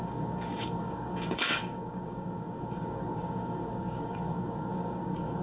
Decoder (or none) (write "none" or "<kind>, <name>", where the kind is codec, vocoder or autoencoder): codec, DAC